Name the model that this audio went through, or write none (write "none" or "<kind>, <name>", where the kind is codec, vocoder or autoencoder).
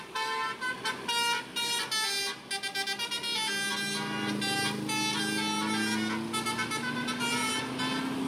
none